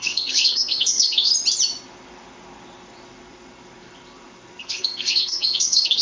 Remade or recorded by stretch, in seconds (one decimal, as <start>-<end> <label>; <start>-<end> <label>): 0.0-1.3 remade; 1.3-4.6 recorded; 4.6-6.0 remade